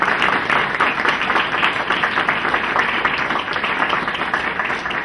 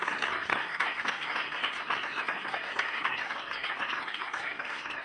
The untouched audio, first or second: first